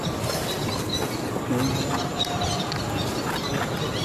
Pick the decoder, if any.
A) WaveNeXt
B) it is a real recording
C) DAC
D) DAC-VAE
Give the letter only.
B